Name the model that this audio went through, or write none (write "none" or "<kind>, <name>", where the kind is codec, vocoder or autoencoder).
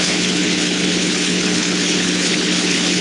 codec, HILCodec